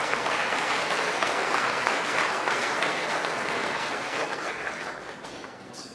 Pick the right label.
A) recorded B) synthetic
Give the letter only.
B